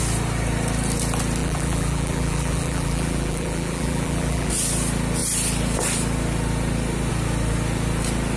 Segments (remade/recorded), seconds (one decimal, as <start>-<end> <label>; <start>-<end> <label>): 0.0-1.4 recorded; 1.4-4.5 remade; 4.5-8.4 recorded